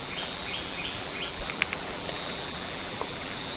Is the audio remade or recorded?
remade